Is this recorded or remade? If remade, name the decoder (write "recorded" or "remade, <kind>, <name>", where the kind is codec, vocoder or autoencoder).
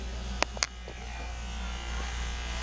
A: recorded